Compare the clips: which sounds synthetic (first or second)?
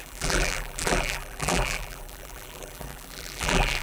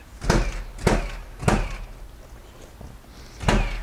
first